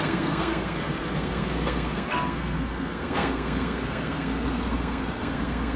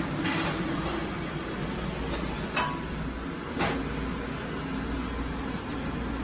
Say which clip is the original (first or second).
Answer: second